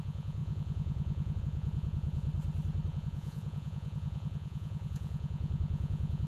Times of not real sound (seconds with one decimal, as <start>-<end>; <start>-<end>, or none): 0.0-2.3; 2.9-6.3